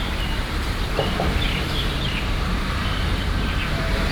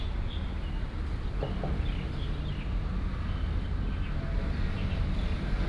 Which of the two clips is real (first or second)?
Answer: second